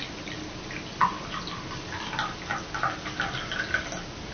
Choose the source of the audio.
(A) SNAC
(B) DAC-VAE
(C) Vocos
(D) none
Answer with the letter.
D